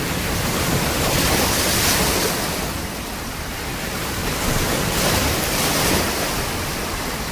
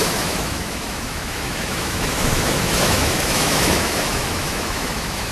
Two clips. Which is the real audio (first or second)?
first